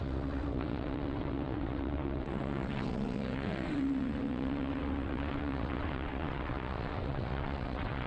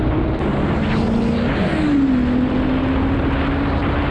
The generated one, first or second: first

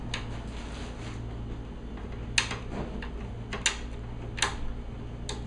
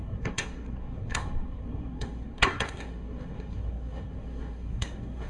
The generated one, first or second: second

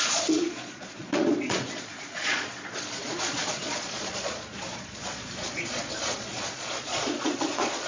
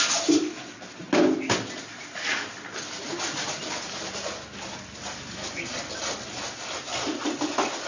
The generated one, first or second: first